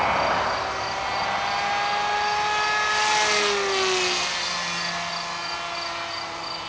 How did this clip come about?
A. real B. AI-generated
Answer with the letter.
A